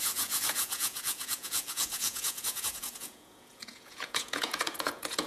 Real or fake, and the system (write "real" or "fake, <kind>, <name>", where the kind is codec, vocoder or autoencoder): fake, vocoder, Vocos